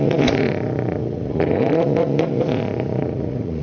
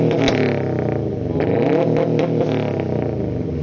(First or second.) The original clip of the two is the second